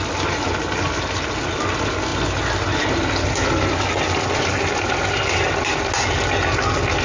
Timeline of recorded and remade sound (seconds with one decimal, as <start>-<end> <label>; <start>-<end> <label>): 0.0-7.0 recorded